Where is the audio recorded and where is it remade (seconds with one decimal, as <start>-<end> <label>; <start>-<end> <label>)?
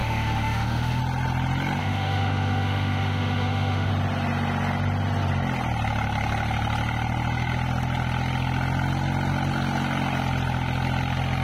0.0-1.0 remade; 1.0-1.8 recorded; 1.8-3.9 remade; 3.9-11.4 recorded